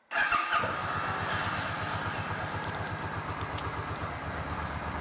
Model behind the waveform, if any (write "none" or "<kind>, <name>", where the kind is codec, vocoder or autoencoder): none